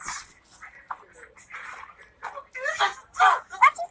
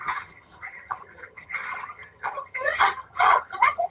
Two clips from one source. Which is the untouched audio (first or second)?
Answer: first